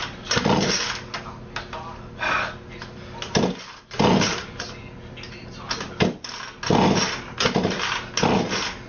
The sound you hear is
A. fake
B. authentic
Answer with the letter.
B